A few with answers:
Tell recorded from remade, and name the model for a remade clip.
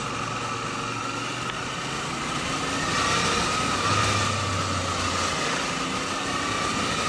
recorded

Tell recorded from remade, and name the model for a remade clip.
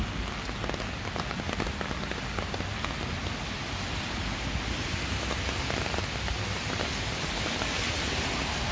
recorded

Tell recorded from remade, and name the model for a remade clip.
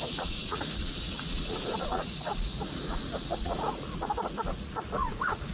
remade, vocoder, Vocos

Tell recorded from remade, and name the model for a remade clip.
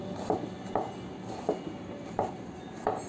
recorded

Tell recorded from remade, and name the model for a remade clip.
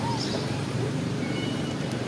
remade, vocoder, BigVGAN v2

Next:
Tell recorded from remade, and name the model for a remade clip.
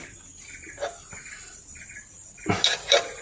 recorded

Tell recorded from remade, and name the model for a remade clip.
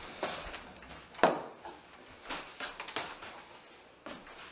recorded